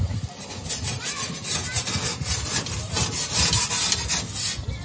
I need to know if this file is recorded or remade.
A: recorded